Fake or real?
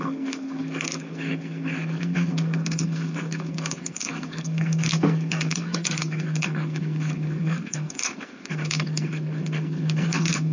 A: fake